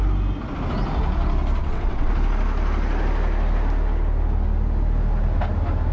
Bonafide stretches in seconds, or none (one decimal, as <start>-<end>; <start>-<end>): 0.0-1.6; 2.1-5.9